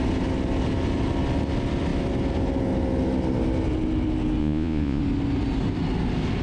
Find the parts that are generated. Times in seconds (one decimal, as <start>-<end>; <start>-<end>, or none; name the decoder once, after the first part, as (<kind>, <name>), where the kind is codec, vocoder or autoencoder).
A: 4.4-5.0 (vocoder, Vocos)